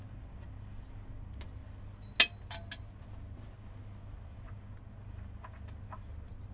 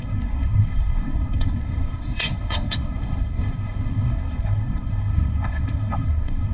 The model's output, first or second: second